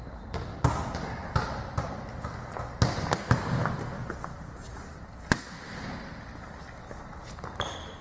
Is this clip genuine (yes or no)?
yes